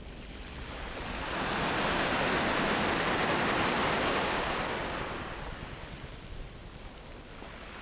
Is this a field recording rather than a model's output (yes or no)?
yes